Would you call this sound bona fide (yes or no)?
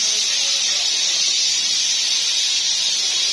yes